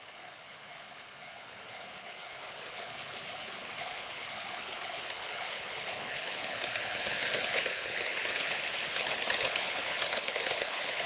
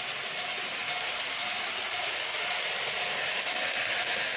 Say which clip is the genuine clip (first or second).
second